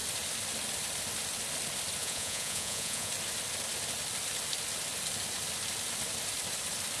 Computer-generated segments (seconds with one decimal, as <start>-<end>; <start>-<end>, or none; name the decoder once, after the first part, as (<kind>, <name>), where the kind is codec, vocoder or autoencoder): 2.0-3.1 (vocoder, Vocos)